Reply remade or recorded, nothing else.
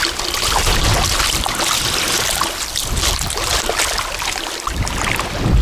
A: recorded